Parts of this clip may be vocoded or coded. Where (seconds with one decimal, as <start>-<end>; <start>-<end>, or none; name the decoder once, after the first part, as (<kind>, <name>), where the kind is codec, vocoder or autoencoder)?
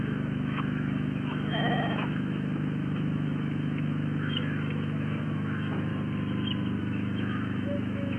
0.0-5.9 (autoencoder, DAC-VAE); 6.8-8.2